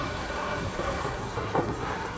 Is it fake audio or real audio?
fake